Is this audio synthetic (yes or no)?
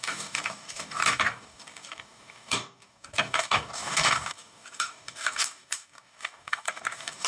yes